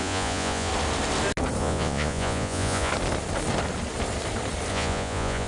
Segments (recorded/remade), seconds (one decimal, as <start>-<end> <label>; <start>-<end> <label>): 0.0-0.7 remade; 0.7-1.6 recorded; 1.6-2.9 remade; 2.9-4.7 recorded; 4.7-5.5 remade